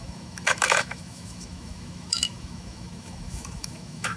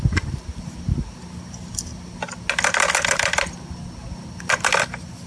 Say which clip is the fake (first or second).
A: first